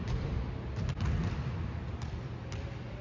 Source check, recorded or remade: recorded